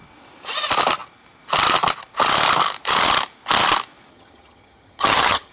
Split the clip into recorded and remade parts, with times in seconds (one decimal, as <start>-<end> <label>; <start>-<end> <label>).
0.0-4.1 recorded; 4.1-5.5 remade